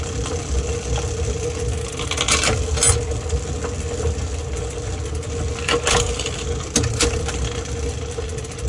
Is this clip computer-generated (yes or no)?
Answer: no